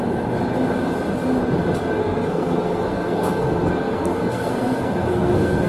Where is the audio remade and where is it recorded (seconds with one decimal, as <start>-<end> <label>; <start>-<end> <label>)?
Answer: 0.0-2.0 recorded; 2.0-5.7 remade